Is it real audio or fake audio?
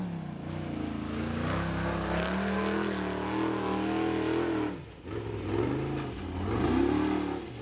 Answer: real